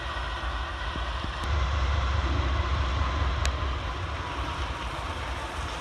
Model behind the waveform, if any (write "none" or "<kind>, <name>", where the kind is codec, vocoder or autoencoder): none